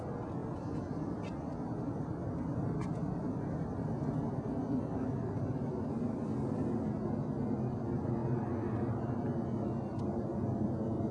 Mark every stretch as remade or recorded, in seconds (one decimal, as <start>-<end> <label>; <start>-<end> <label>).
0.0-11.1 recorded